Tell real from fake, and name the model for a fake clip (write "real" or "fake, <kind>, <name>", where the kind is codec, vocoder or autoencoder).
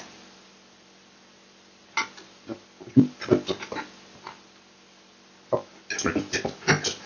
real